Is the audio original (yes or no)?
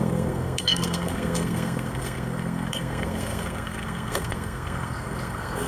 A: no